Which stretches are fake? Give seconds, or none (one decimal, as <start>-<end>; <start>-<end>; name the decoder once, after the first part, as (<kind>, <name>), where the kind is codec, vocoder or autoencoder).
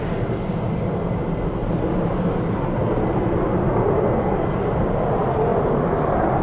none